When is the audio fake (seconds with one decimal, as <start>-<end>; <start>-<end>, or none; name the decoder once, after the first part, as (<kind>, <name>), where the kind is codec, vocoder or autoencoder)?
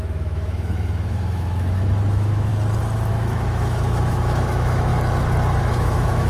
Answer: 0.0-2.5 (autoencoder, DAC-VAE); 3.1-4.9; 5.6-6.3